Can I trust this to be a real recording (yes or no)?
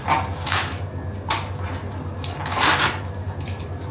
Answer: yes